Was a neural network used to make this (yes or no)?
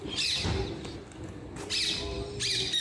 no